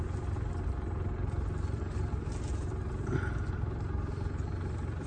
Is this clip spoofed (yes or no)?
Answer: no